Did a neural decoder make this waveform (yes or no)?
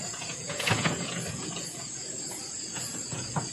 yes